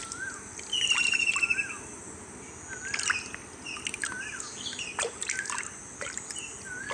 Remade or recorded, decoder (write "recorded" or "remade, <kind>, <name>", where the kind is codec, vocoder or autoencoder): recorded